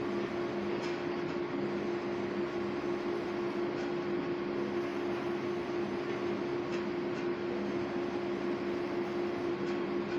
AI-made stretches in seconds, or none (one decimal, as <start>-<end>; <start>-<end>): none